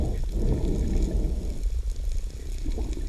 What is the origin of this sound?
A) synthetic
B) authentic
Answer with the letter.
B